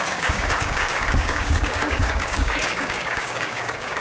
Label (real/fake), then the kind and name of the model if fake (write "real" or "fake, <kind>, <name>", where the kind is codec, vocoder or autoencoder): fake, codec, DAC